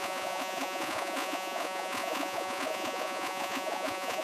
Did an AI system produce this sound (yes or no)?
yes